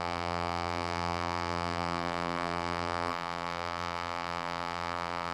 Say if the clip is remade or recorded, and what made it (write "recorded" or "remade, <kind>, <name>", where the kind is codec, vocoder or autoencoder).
remade, vocoder, BigVGAN v2